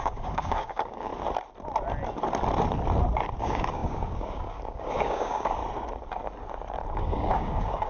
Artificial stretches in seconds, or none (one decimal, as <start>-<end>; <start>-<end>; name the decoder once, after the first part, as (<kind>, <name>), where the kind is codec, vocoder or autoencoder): 0.0-1.1 (codec, DAC); 3.4-5.6; 6.9-7.9